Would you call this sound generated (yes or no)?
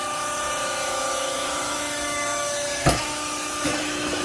yes